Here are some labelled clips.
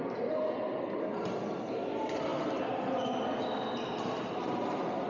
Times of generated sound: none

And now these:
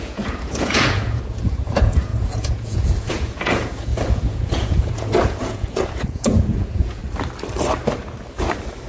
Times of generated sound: 0.0-7.0

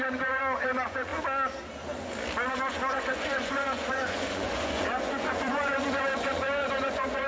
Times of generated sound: 0.0-1.1; 2.5-7.3